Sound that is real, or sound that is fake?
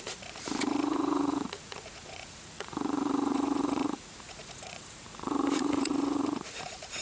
fake